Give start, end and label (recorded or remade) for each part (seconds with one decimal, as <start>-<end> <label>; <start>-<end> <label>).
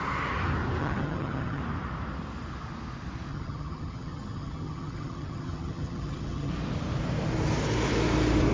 0.0-0.8 recorded; 0.8-1.6 remade; 1.6-3.3 recorded; 3.3-6.5 remade; 6.5-8.5 recorded